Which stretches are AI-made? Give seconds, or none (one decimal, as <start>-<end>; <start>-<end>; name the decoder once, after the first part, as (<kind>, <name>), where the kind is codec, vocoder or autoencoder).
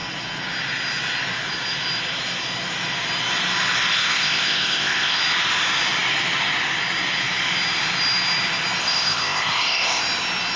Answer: 3.9-5.2 (codec, ZipCodec); 8.8-10.0